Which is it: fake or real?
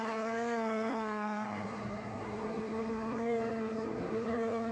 fake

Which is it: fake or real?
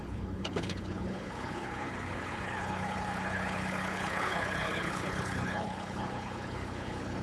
fake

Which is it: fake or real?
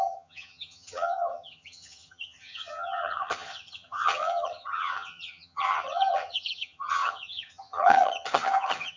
fake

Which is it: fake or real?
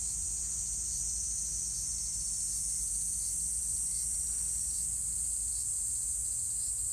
real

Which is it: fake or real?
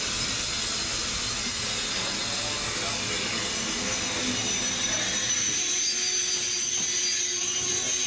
real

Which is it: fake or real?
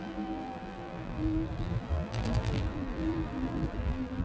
fake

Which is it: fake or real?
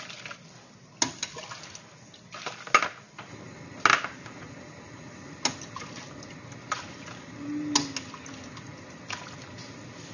real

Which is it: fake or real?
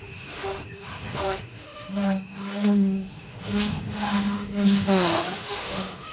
fake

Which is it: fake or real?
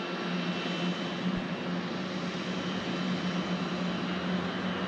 real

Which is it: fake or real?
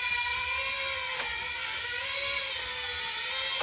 real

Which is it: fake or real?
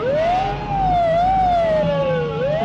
real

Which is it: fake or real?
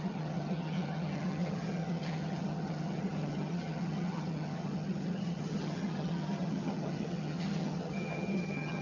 fake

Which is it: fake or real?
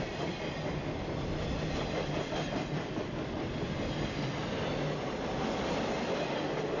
real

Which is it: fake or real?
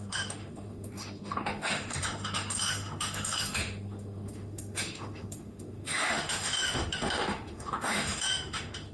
fake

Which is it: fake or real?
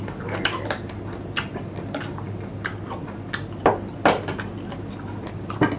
real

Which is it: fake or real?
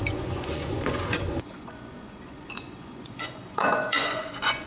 fake